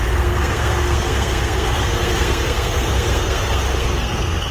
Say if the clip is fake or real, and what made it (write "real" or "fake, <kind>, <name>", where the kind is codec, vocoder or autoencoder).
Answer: fake, codec, SNAC